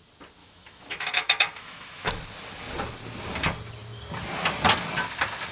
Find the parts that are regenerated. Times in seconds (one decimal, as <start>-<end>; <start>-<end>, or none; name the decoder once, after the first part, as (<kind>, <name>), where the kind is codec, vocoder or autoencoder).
0.4-2.1 (autoencoder, DAC-VAE)